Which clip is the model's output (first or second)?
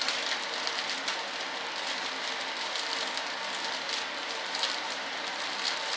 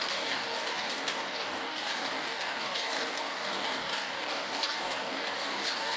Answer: second